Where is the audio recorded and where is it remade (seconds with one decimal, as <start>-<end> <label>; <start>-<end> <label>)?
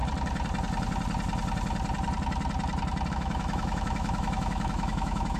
0.0-3.1 recorded; 3.1-5.4 remade